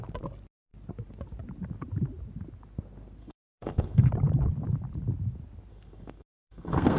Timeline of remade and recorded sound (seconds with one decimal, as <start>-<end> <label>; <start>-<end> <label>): 0.0-3.2 recorded; 3.2-4.1 remade; 4.1-5.7 recorded; 5.7-7.0 remade

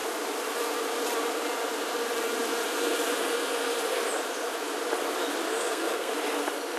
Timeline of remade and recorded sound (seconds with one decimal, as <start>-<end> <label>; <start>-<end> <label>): 0.0-5.5 recorded; 5.5-6.1 remade; 6.1-6.8 recorded